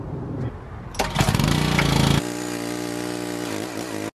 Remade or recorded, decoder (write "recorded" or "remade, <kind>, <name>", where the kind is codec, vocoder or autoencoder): recorded